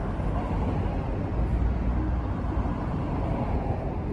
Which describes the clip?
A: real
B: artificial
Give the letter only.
A